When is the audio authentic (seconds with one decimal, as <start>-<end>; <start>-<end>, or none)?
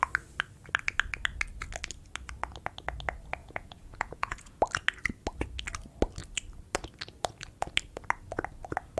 0.0-3.4; 4.5-9.0